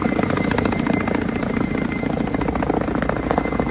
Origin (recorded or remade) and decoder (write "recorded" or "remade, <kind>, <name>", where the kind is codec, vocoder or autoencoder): recorded